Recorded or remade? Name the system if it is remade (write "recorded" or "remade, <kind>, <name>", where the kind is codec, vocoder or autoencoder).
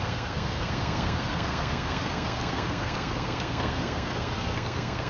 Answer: remade, codec, SNAC